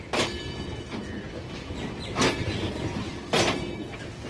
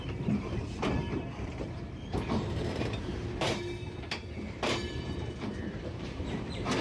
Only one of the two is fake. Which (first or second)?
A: second